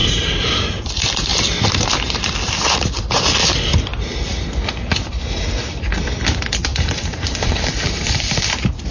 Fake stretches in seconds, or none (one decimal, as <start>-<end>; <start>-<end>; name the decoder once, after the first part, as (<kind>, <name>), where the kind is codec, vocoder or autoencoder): 0.0-0.8 (vocoder, BigVGAN v2); 1.3-2.1; 6.7-8.5